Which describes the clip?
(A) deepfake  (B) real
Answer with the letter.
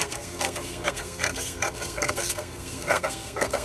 A